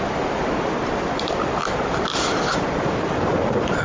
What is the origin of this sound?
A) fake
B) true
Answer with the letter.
A